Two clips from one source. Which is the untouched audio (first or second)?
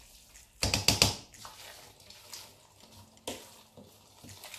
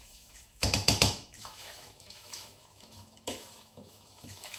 first